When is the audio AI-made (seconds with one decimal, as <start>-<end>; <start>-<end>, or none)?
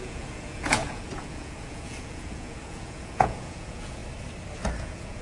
0.0-4.0; 4.8-5.2